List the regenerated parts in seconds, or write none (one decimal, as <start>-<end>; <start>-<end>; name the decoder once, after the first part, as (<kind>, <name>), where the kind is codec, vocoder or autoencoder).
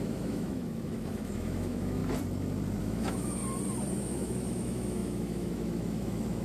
0.0-2.0 (autoencoder, DAC-VAE); 2.8-3.4; 3.9-6.4